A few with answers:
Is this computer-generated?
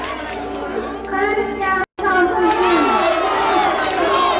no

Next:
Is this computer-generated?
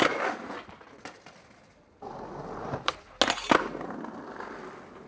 no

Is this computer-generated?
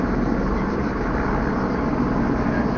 no